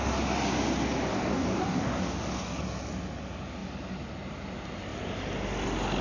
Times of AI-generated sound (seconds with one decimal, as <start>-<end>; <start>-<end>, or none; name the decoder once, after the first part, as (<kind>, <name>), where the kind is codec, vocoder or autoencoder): 1.1-2.6 (codec, DAC)